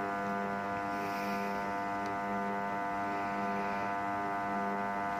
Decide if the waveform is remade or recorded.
recorded